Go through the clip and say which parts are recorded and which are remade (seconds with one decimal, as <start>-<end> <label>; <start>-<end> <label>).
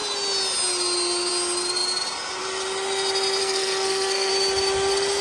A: 0.0-3.4 recorded; 3.4-4.3 remade; 4.3-5.2 recorded